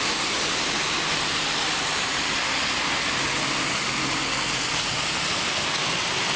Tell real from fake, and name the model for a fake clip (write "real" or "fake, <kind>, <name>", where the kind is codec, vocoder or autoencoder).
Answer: real